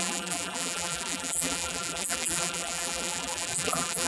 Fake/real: fake